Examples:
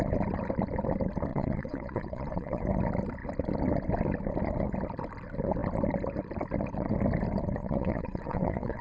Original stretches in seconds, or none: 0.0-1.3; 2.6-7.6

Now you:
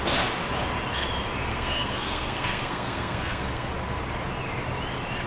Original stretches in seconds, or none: 0.0-1.5; 3.7-5.3

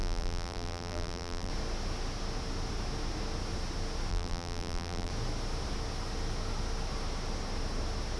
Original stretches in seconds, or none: 1.5-4.1; 5.1-8.2

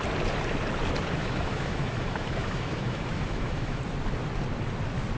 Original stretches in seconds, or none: 0.0-1.2; 3.8-5.2

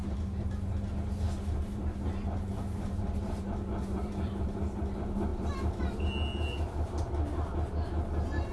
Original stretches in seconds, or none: 4.8-5.3; 6.1-8.5